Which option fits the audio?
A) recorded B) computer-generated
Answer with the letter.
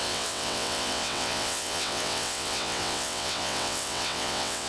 B